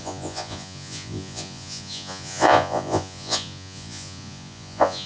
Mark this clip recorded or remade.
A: remade